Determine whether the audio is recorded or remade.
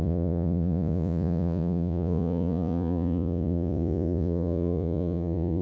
remade